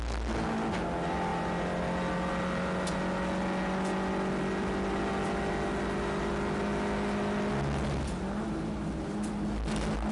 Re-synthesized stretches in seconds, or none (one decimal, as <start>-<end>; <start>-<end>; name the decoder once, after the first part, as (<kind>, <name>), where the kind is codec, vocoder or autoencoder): none